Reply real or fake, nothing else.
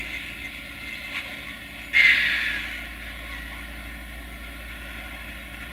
real